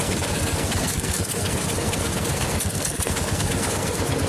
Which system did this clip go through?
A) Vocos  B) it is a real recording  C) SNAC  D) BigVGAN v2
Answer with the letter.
C